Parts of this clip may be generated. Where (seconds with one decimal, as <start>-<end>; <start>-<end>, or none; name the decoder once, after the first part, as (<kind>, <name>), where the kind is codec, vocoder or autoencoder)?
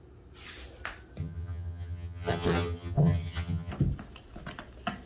1.2-3.7 (vocoder, HiFi-GAN)